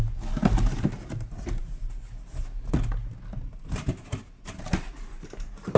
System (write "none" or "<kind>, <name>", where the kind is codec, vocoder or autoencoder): none